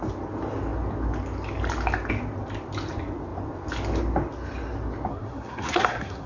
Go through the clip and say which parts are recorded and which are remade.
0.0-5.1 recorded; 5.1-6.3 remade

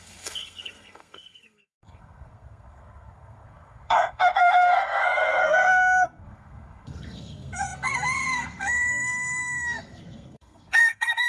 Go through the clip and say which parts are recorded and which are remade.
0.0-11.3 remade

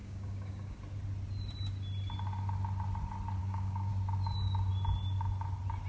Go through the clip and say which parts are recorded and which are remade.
0.0-0.8 remade; 0.8-3.4 recorded; 3.4-3.9 remade; 3.9-5.9 recorded